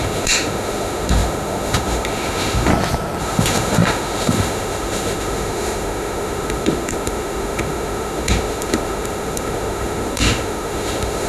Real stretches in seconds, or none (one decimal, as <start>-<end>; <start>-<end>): 2.7-3.2